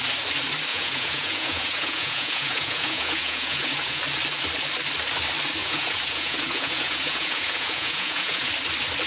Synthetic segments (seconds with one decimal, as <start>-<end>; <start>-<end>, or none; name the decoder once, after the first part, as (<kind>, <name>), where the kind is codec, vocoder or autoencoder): 0.7-4.0 (vocoder, Vocos); 5.6-8.5